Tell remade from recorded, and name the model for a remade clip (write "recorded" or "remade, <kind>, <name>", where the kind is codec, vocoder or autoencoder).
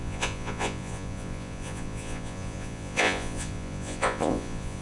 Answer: remade, vocoder, Vocos